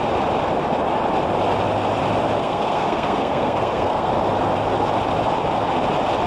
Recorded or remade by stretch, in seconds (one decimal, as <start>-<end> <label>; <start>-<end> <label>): 0.0-2.4 recorded; 2.4-4.1 remade; 4.1-6.3 recorded